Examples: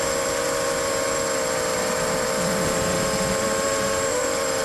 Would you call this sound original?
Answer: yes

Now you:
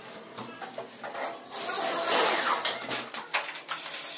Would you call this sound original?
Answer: yes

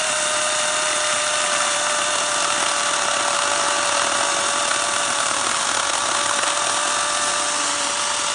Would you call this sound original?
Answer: yes